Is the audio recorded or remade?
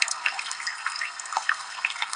remade